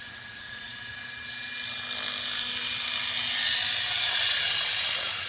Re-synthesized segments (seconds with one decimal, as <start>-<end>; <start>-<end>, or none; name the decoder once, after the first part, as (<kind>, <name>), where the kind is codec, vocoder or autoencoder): 0.0-0.7 (vocoder, Vocos); 3.9-5.3